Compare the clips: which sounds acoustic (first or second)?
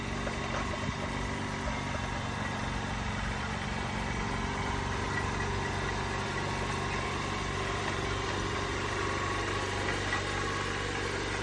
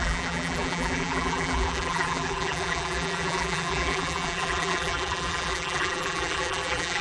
first